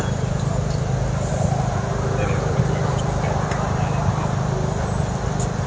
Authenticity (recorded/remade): recorded